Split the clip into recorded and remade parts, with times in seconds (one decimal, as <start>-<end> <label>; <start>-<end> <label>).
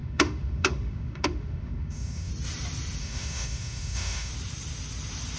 0.0-2.3 remade; 2.3-3.0 recorded; 3.0-4.3 remade; 4.3-5.4 recorded